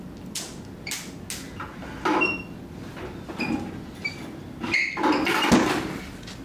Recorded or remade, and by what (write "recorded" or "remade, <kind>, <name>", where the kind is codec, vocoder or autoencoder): recorded